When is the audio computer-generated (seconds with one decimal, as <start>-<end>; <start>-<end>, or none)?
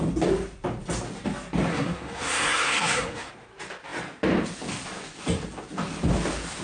1.7-3.3